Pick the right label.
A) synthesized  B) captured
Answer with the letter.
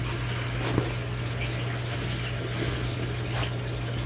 B